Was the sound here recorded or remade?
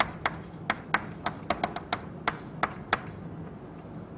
recorded